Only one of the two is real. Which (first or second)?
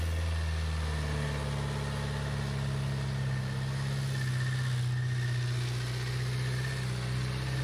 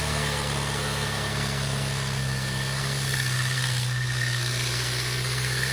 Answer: first